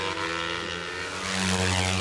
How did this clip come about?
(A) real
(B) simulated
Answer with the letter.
A